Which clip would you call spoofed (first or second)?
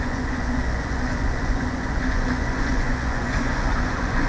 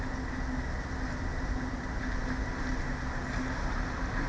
first